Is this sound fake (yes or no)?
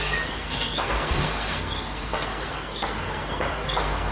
yes